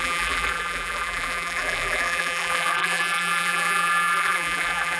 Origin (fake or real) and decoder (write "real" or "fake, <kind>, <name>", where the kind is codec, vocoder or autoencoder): fake, vocoder, BigVGAN v2